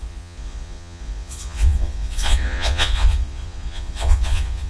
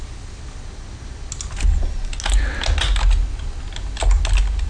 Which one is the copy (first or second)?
first